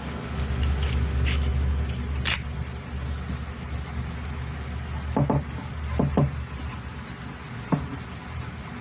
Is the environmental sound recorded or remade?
recorded